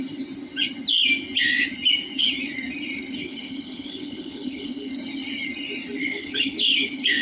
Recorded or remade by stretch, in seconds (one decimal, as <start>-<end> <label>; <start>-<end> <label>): 0.0-3.2 recorded; 3.2-4.9 remade; 4.9-6.0 recorded; 6.0-7.2 remade